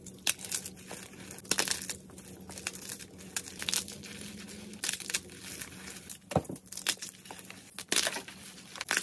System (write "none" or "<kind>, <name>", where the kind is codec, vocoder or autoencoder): none